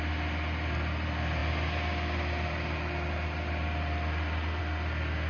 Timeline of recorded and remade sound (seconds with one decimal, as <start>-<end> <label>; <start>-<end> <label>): 0.0-5.3 recorded